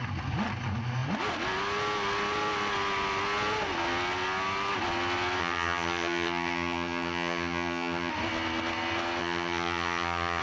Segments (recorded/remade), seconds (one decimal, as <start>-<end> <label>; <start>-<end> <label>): 0.0-5.4 recorded; 5.4-8.1 remade; 8.1-9.2 recorded; 9.2-10.4 remade